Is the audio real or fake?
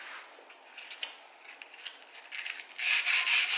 real